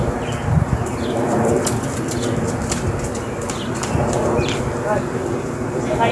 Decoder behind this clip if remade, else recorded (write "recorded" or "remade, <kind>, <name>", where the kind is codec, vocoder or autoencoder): recorded